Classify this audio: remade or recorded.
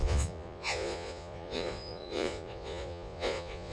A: remade